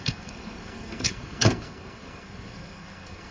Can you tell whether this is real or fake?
fake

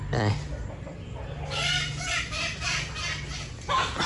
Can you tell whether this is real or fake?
real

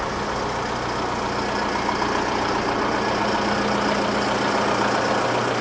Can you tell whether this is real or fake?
real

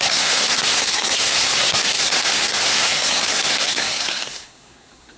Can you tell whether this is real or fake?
fake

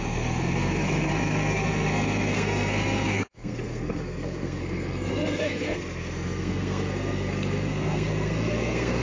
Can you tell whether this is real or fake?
fake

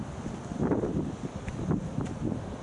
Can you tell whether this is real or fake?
real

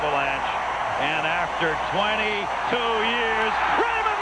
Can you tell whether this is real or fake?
real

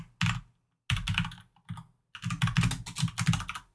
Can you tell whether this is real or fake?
real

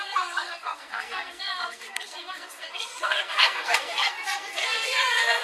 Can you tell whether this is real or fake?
fake